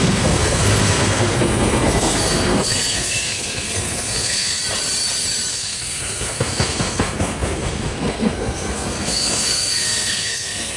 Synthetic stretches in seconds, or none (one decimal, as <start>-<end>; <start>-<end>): 0.0-4.6; 5.5-10.8